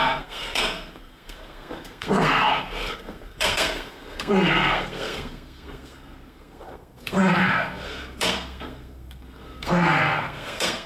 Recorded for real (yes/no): no